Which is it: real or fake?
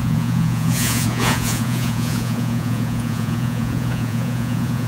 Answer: fake